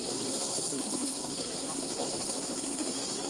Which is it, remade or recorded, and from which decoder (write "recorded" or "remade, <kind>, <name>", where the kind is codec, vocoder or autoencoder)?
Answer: remade, codec, SNAC